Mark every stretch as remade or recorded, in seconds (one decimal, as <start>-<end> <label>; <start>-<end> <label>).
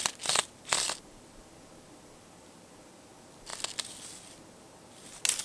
0.0-5.4 recorded